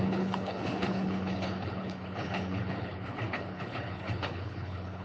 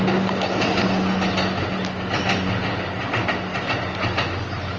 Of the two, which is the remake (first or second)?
first